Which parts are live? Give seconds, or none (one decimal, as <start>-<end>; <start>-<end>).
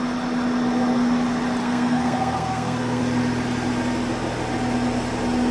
0.0-1.6; 3.0-5.5